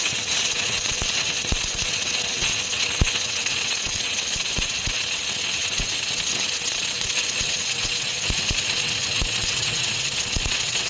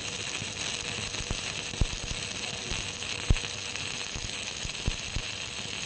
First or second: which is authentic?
second